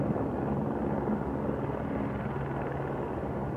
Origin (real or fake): real